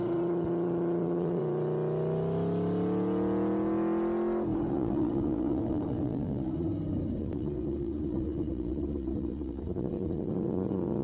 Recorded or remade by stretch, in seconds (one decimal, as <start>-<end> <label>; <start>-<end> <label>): 0.0-1.4 remade; 1.4-4.7 recorded; 4.7-6.7 remade; 6.7-7.2 recorded; 7.2-11.0 remade